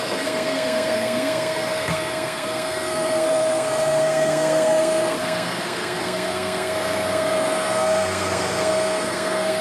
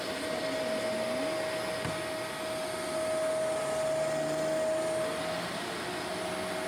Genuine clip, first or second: second